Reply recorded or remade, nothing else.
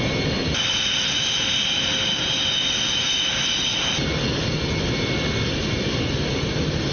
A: recorded